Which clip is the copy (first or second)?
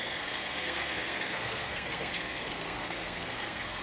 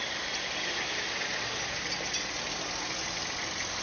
first